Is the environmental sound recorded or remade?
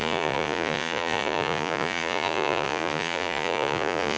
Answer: remade